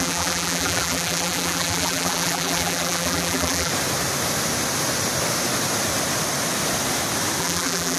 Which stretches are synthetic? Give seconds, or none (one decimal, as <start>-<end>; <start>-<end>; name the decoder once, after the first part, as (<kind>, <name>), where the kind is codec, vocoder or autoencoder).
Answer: 0.0-3.7 (vocoder, BigVGAN v2); 7.4-8.0